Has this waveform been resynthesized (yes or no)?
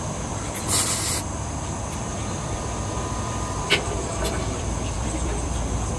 yes